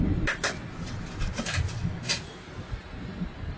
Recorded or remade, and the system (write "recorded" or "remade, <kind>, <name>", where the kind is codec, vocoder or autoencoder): recorded